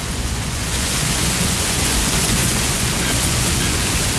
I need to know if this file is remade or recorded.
remade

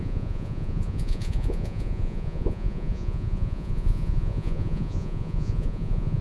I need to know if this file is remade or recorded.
remade